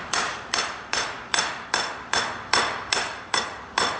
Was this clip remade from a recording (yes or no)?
yes